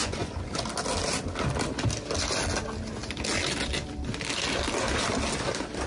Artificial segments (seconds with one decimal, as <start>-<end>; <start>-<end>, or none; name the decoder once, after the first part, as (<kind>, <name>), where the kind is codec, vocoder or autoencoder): 0.0-0.6 (vocoder, Vocos)